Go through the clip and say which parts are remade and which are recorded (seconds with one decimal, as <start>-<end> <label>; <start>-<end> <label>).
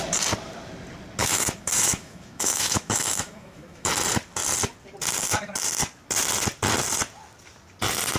0.0-1.2 recorded; 1.2-3.9 remade; 3.9-8.2 recorded